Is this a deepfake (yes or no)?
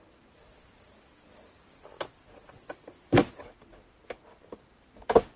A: no